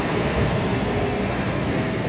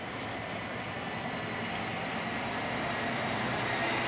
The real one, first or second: second